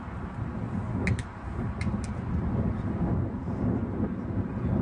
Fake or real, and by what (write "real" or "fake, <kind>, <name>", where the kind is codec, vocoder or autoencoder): real